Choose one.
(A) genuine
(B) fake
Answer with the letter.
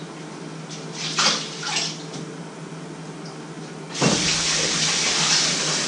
A